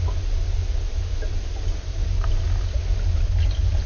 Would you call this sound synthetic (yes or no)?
no